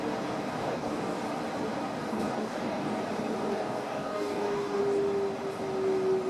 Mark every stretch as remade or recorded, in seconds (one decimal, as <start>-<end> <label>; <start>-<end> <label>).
0.0-0.6 recorded; 0.6-1.2 remade; 1.2-2.1 recorded; 2.1-3.0 remade; 3.0-3.5 recorded; 3.5-4.8 remade; 4.8-6.3 recorded